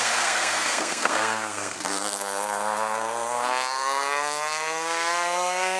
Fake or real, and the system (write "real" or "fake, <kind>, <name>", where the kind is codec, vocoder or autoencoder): fake, codec, SNAC